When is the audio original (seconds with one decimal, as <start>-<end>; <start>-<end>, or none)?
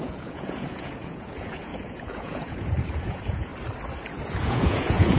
3.5-4.4